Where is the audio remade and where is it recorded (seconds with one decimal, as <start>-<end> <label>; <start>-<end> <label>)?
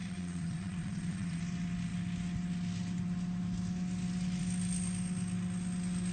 0.0-1.4 remade; 1.4-6.1 recorded